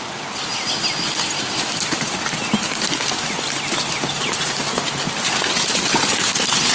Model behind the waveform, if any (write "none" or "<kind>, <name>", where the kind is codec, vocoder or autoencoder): none